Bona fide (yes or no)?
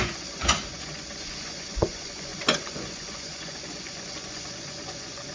no